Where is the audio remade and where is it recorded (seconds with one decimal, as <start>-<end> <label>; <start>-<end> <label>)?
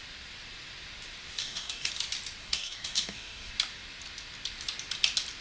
0.0-1.4 recorded; 1.4-1.9 remade; 1.9-2.4 recorded; 2.4-3.5 remade; 3.5-5.4 recorded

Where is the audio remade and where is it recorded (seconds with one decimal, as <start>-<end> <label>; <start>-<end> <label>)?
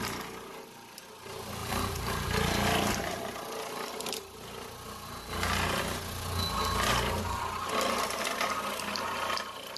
0.0-1.6 recorded; 1.6-2.3 remade; 2.3-9.8 recorded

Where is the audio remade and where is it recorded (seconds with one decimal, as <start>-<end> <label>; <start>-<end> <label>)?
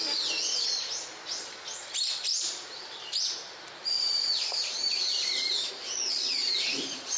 0.0-2.3 recorded; 2.3-5.7 remade; 5.7-6.4 recorded; 6.4-7.2 remade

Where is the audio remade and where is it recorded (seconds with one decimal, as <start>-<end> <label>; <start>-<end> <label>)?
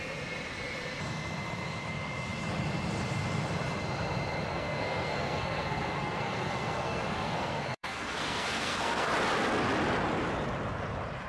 0.0-4.5 recorded; 4.5-9.1 remade; 9.1-11.3 recorded